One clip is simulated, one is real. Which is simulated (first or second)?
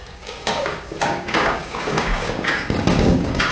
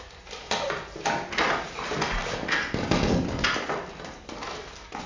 first